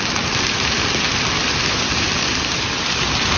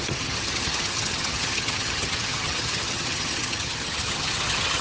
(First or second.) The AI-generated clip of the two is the second